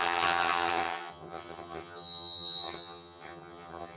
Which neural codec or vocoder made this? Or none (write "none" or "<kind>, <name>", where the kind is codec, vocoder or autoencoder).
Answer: vocoder, HiFi-GAN